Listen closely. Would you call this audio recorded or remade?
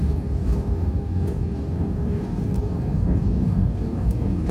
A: remade